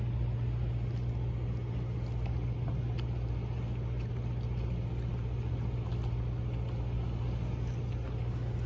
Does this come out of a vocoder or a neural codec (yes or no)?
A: no